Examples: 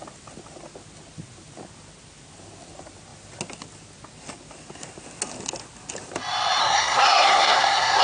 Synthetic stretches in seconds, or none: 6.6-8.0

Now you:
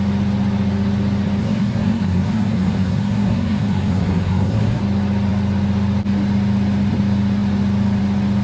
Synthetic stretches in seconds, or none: 1.4-4.8

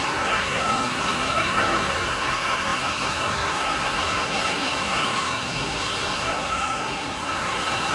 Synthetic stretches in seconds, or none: 0.0-7.9

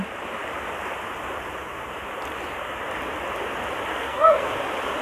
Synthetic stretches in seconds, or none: 3.9-4.5

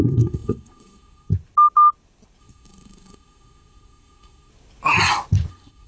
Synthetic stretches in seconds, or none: 0.0-1.3; 2.4-4.5; 5.5-5.9